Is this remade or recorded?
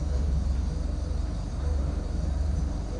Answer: remade